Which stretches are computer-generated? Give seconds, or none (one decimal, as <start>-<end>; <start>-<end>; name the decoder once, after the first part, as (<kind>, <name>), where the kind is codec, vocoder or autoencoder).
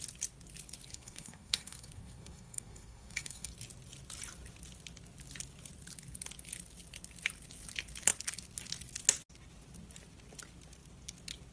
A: 0.9-3.5 (codec, SNAC)